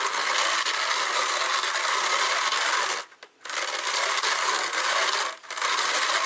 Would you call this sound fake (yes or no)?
no